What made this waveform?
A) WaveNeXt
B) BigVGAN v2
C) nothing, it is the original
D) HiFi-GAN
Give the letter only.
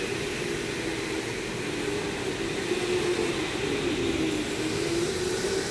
C